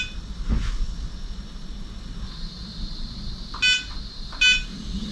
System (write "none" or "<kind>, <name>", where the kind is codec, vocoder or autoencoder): none